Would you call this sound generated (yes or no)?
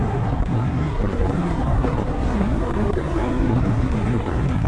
yes